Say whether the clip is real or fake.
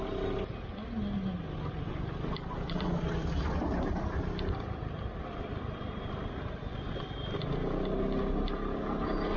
real